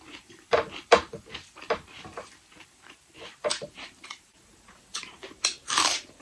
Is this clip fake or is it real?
fake